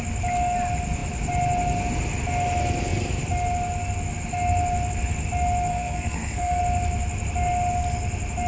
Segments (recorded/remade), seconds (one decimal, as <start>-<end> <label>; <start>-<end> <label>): 0.0-5.7 recorded; 5.7-6.6 remade; 6.6-8.5 recorded